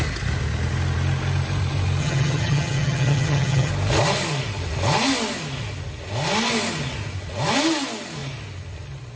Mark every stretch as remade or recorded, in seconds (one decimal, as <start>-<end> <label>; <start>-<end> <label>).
0.0-2.0 recorded; 2.0-3.7 remade; 3.7-9.2 recorded